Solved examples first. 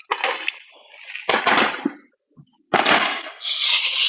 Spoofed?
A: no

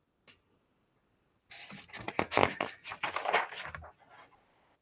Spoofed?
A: no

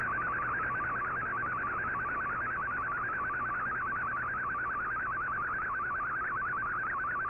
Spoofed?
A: no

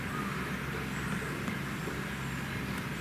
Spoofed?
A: no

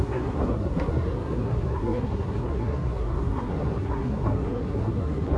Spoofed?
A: yes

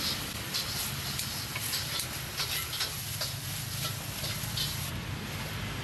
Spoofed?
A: no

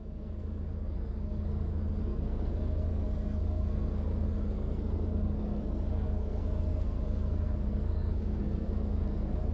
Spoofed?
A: yes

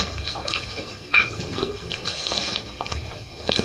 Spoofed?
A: yes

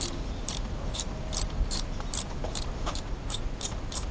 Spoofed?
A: no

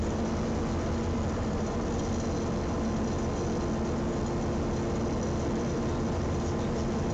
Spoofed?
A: no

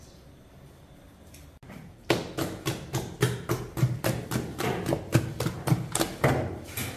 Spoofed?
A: no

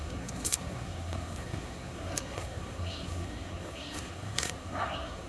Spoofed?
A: yes